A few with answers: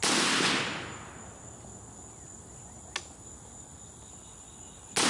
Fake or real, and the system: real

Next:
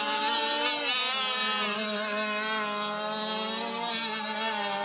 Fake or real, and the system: real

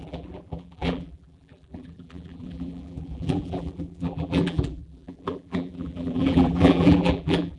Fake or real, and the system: fake, vocoder, BigVGAN v2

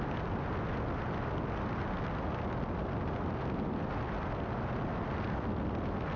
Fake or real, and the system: real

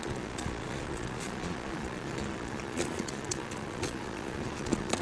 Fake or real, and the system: fake, vocoder, Vocos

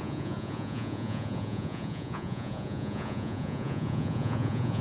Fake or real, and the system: fake, vocoder, Vocos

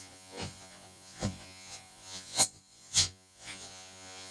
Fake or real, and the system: fake, vocoder, Vocos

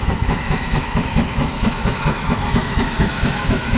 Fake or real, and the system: fake, autoencoder, DAC-VAE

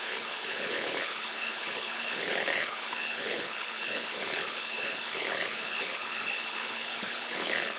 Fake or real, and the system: fake, codec, HILCodec